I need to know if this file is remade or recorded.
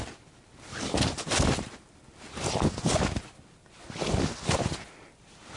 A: recorded